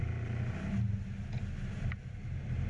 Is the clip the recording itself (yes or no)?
yes